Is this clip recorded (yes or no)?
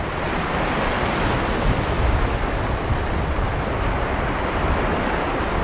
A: yes